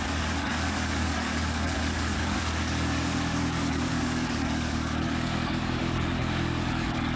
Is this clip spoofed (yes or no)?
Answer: yes